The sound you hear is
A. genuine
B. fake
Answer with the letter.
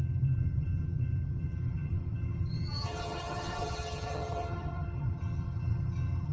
B